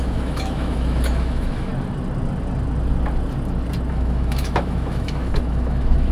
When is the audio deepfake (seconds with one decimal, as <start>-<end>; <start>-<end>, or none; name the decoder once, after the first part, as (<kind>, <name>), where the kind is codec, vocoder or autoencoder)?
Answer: 0.0-1.7 (autoencoder, DAC-VAE); 3.9-6.1